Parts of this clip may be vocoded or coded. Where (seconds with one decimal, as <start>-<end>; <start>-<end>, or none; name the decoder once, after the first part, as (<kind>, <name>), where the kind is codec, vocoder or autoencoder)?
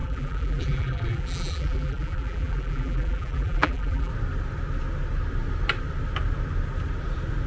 0.0-4.1 (vocoder, BigVGAN v2)